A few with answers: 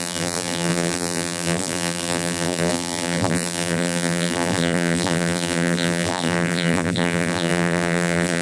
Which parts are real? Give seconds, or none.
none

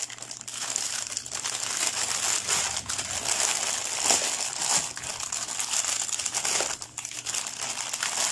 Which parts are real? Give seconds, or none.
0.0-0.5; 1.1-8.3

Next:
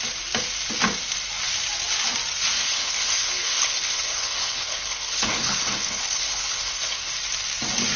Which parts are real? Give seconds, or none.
0.0-2.6; 7.1-8.0